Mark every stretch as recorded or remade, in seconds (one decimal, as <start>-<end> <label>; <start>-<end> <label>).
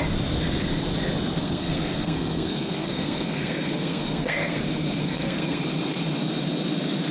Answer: 0.0-1.4 recorded; 1.4-4.6 remade; 4.6-5.0 recorded; 5.0-5.6 remade; 5.6-7.1 recorded